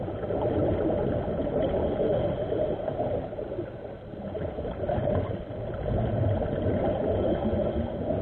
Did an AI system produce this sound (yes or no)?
no